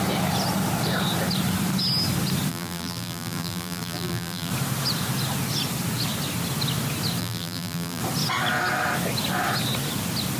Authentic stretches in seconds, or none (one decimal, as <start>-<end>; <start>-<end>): 0.0-2.5; 4.5-7.2; 8.0-10.4